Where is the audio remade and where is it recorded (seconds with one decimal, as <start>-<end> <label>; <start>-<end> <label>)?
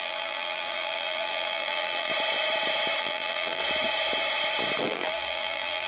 0.0-2.1 remade; 2.1-3.0 recorded; 3.0-3.6 remade; 3.6-4.8 recorded; 4.8-5.9 remade